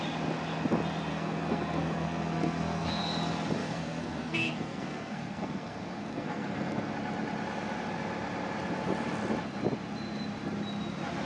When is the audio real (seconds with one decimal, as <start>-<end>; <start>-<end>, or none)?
0.0-1.1; 3.0-3.6; 6.9-11.3